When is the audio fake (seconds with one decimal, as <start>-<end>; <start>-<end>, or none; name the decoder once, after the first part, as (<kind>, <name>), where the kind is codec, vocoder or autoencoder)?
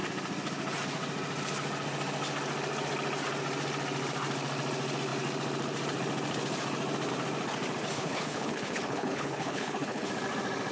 7.9-10.1 (codec, HILCodec)